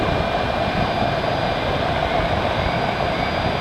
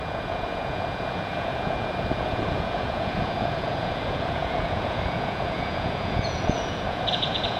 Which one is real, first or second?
first